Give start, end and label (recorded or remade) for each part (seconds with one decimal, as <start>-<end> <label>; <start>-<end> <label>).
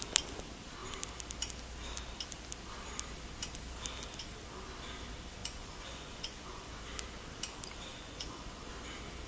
0.0-5.4 recorded; 5.4-6.8 remade; 6.8-7.9 recorded; 7.9-8.6 remade; 8.6-9.3 recorded